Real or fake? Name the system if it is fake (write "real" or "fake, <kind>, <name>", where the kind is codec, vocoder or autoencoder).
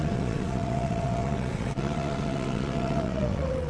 fake, vocoder, WaveNeXt